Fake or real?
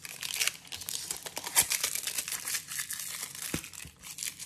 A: real